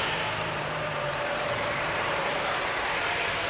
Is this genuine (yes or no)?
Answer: no